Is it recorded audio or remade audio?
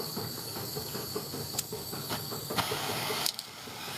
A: remade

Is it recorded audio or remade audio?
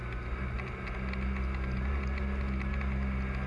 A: recorded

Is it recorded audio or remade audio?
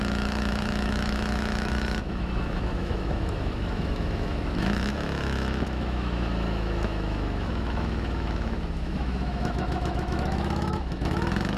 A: remade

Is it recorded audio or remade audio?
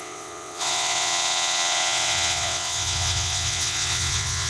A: remade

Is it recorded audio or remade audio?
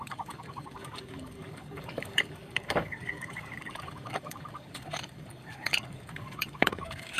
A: remade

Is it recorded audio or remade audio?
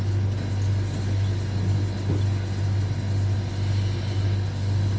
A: recorded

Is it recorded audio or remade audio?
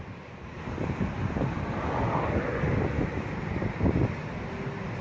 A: recorded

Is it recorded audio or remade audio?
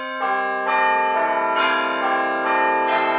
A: recorded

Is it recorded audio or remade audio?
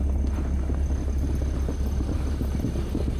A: recorded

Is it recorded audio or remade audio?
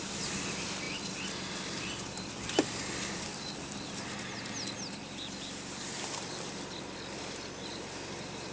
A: recorded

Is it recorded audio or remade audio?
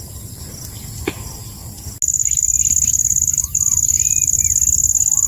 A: recorded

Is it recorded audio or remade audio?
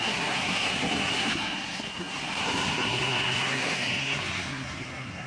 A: remade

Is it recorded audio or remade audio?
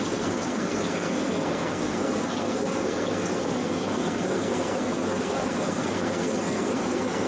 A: remade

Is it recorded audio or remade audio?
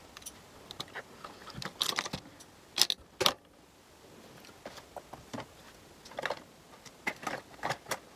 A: recorded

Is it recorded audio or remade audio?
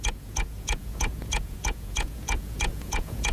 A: remade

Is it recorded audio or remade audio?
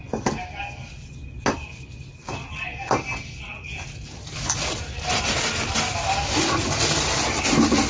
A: recorded